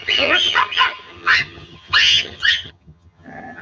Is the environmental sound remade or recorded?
remade